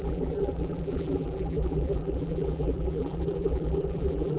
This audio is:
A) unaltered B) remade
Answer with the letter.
B